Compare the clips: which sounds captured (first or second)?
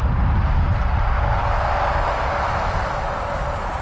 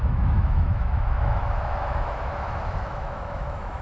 first